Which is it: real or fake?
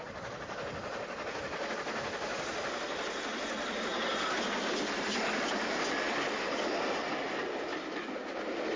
real